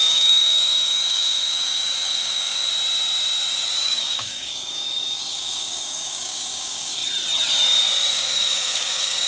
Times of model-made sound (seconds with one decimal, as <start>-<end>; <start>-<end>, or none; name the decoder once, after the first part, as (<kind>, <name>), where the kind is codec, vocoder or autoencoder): 0.0-2.7 (codec, DAC); 3.8-7.0; 8.1-9.3